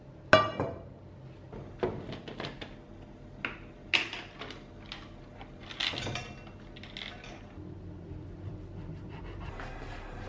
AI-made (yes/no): no